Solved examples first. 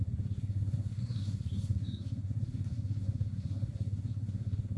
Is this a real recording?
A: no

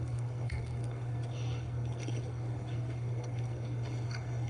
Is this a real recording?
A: no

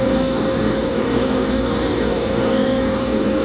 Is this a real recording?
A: no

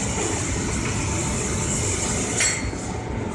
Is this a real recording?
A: yes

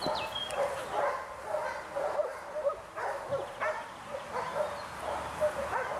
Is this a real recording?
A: yes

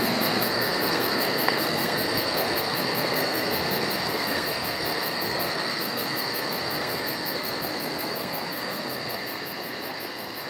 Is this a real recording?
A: no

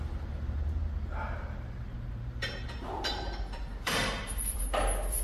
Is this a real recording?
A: no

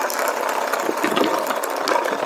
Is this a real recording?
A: yes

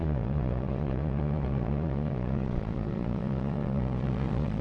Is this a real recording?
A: no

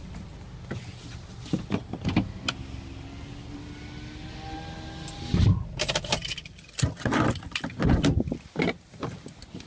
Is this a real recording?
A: yes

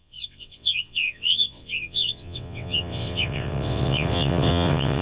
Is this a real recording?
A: no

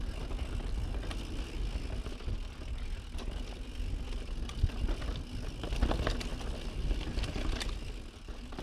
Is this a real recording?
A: yes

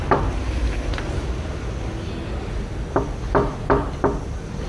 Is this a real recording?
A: yes